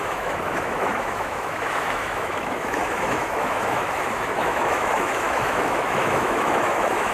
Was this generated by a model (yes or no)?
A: yes